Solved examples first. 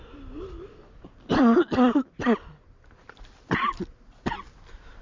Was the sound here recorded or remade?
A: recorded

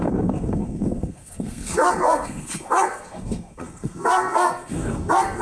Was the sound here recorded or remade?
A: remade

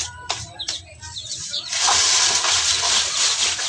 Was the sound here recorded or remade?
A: recorded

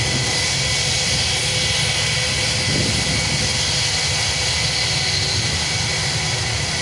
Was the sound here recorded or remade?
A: recorded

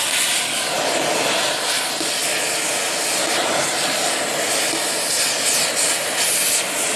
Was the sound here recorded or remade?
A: recorded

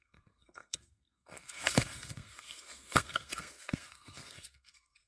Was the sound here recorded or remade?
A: remade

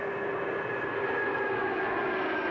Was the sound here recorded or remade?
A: recorded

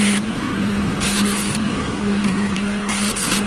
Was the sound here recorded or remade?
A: remade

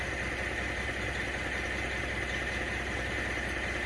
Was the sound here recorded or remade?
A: recorded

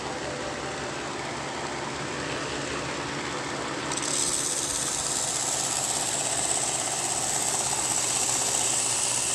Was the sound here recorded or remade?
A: recorded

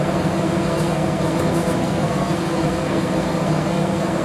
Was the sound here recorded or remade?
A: remade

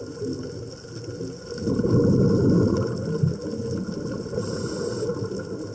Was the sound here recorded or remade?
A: recorded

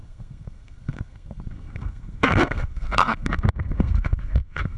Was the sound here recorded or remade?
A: remade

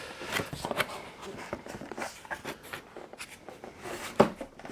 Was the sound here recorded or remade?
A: recorded